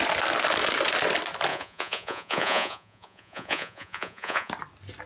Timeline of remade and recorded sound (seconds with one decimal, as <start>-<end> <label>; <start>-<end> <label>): 0.0-1.5 recorded; 1.5-4.5 remade; 4.5-5.1 recorded